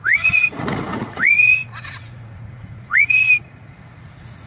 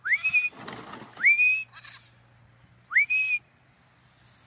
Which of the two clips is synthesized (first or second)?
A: first